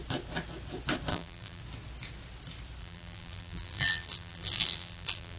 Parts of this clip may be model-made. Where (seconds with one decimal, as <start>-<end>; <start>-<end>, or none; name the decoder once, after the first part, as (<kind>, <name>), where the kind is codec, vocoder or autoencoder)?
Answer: 1.1-1.6 (vocoder, BigVGAN v2); 2.8-5.4